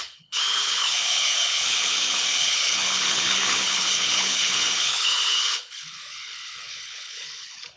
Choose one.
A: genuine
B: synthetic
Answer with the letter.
B